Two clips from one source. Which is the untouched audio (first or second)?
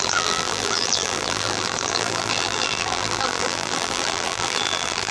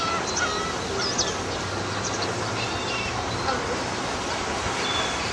second